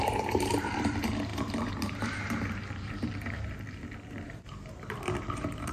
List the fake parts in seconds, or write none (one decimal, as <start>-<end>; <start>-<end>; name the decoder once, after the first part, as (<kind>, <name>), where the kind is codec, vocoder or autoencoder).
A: 0.0-5.7 (vocoder, BigVGAN v2)